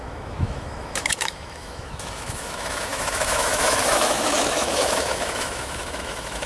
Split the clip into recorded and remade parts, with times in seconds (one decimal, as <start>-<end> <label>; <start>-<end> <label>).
0.0-6.5 remade